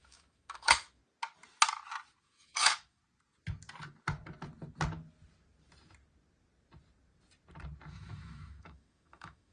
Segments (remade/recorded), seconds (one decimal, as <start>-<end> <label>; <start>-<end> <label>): 0.0-1.0 remade; 1.0-2.2 recorded; 2.2-3.0 remade; 3.0-7.9 recorded; 7.9-9.5 remade